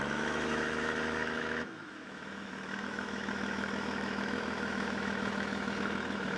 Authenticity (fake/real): fake